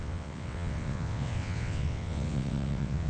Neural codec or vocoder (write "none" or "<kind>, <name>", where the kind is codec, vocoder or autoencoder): vocoder, WaveNeXt